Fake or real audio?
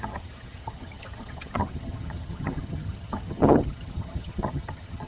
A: fake